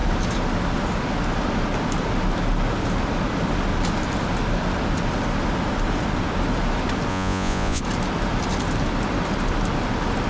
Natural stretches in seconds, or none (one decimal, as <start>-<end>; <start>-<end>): 0.0-7.1; 7.8-10.3